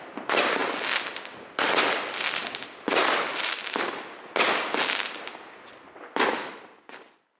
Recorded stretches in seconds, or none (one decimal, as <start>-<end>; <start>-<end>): 0.0-7.4